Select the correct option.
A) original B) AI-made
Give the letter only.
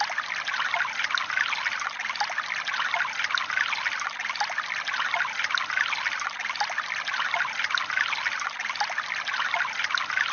A